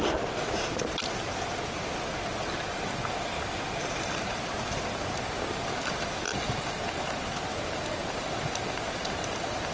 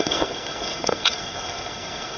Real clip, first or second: first